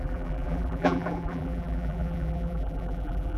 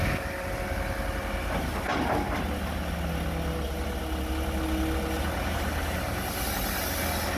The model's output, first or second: first